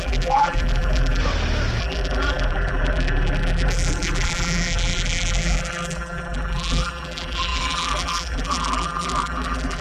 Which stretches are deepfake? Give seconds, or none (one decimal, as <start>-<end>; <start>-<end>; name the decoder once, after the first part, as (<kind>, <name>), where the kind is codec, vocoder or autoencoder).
0.0-1.2 (vocoder, BigVGAN v2); 1.8-9.8